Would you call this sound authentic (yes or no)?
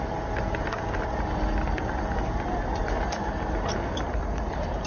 yes